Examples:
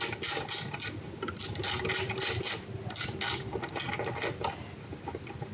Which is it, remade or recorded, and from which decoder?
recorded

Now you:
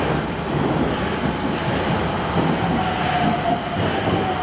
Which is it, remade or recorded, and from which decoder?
recorded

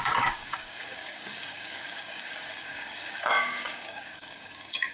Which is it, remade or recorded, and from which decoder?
remade, codec, DAC